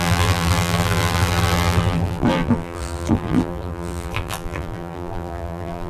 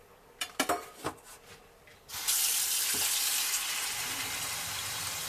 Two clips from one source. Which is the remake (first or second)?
first